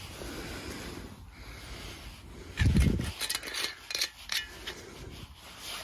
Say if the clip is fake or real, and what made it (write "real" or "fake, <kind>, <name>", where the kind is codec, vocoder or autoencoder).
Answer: real